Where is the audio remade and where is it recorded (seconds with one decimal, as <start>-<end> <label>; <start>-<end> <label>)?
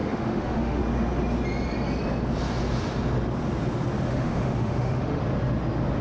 0.0-0.8 remade; 0.8-4.1 recorded; 4.1-5.2 remade; 5.2-6.0 recorded